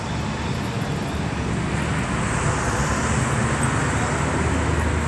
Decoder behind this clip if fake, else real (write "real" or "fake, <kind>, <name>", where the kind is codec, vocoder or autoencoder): real